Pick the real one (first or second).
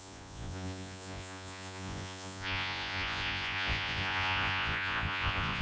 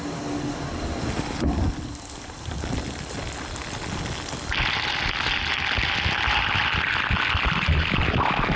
second